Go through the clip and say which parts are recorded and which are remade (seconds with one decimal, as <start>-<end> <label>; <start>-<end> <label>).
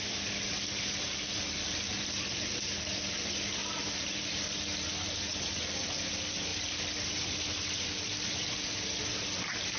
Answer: 0.0-9.8 recorded